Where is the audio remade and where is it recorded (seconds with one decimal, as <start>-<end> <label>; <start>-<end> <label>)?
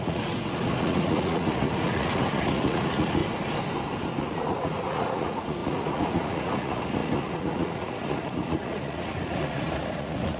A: 0.0-3.2 remade; 3.2-4.2 recorded; 4.2-10.4 remade